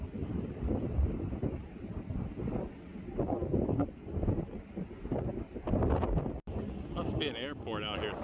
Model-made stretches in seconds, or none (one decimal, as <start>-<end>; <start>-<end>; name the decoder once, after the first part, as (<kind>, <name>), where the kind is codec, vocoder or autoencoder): none